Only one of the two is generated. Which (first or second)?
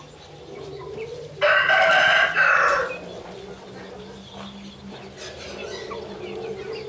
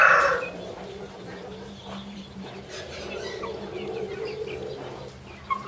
second